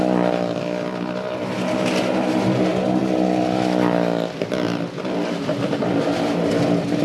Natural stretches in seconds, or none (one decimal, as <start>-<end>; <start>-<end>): 0.0-7.0